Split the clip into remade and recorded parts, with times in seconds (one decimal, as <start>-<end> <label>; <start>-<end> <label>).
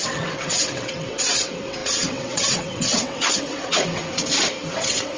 0.0-4.0 remade; 4.0-4.6 recorded; 4.6-5.2 remade